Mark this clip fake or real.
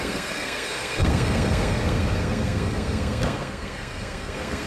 fake